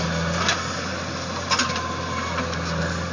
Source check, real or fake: real